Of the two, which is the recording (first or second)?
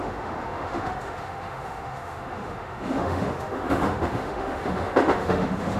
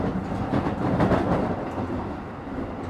second